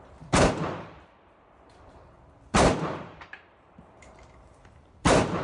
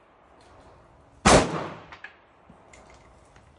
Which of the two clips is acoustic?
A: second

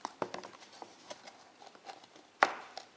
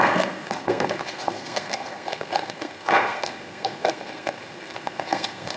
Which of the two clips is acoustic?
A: first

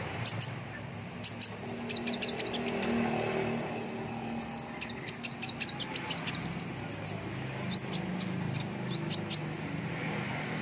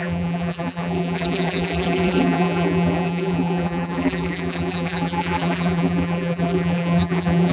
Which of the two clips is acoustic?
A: first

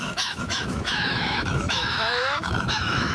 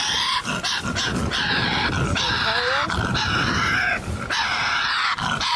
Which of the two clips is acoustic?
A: second